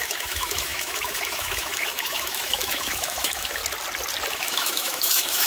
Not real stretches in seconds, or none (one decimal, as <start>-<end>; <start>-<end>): 0.0-3.6; 4.3-5.5